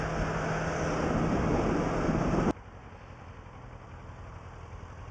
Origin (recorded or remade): recorded